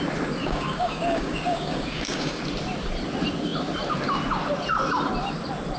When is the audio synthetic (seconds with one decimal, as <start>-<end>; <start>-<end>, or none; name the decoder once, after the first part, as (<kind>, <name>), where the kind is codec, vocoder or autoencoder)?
0.4-2.4 (codec, DAC)